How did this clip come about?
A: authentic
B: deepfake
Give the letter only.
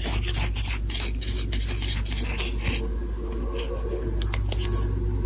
A